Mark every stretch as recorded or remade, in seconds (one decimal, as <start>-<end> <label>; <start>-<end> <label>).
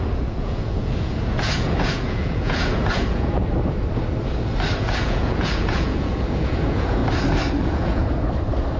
0.0-3.4 remade; 3.4-4.8 recorded; 4.8-7.0 remade; 7.0-7.6 recorded; 7.6-8.0 remade; 8.0-8.8 recorded